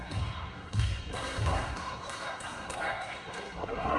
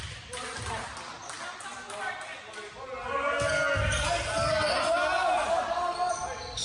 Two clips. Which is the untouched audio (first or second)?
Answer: second